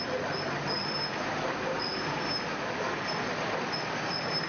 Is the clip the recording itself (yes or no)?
yes